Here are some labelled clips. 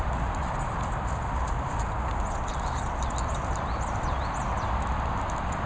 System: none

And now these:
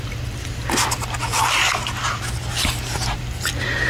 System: none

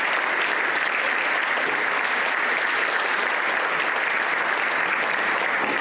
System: none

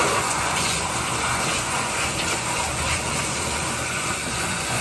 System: vocoder, Vocos